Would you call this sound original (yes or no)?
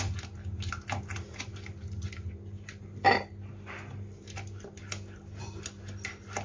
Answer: yes